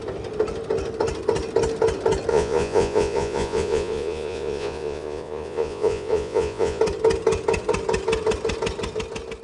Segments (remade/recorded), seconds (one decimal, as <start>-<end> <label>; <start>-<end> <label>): 0.0-2.3 recorded; 2.3-6.8 remade; 6.8-9.4 recorded